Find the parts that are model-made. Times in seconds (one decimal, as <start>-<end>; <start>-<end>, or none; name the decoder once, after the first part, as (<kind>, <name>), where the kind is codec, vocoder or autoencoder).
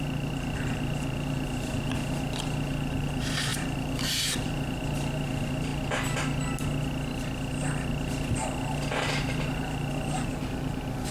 0.0-5.7 (vocoder, BigVGAN v2); 9.0-11.1